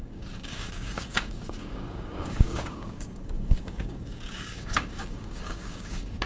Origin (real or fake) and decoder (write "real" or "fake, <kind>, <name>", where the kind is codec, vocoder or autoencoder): fake, codec, DAC